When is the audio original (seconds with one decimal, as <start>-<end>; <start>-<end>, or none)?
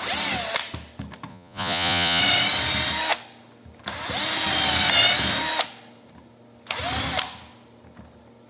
0.0-1.3; 2.2-8.5